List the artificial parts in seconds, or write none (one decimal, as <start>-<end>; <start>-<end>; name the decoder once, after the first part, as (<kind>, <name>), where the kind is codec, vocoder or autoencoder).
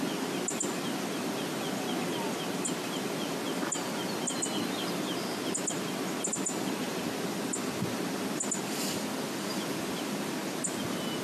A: none